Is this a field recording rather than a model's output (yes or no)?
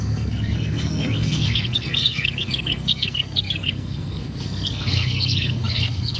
no